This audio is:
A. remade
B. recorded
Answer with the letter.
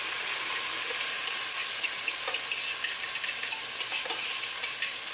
B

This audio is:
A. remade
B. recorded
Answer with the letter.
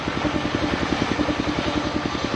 B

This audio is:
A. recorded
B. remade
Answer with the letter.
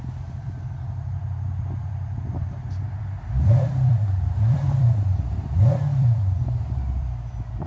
B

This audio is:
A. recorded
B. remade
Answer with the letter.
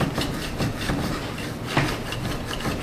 A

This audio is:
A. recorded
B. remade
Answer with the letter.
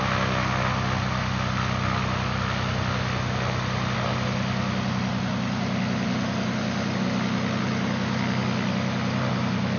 A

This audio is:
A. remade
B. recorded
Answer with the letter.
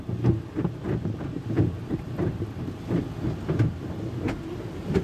B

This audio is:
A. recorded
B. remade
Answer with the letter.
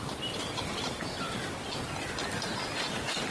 B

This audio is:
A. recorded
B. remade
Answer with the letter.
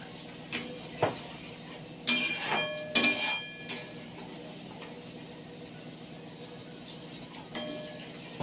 A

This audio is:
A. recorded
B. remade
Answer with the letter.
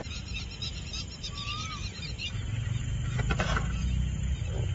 A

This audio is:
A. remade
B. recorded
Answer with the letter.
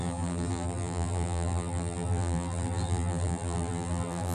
A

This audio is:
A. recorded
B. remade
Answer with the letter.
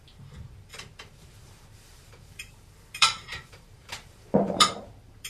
B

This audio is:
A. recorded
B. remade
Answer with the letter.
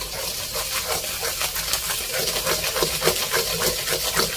A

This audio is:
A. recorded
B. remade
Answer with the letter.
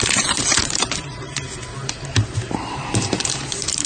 B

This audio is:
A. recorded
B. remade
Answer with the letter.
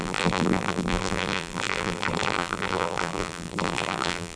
B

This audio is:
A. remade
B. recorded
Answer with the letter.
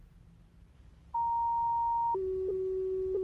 B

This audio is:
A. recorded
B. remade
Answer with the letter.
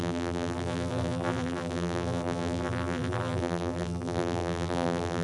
B